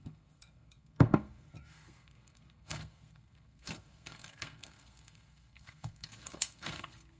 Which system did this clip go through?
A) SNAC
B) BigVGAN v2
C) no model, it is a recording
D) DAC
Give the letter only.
A